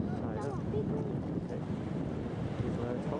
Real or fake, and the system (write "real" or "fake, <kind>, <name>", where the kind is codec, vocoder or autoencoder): real